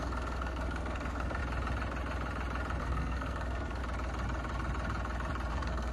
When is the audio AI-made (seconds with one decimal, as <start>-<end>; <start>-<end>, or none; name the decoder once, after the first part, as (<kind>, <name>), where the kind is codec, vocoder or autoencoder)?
0.0-1.4 (codec, SNAC); 2.8-3.8; 5.5-5.9